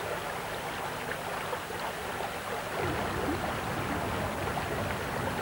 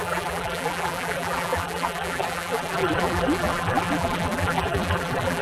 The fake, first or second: second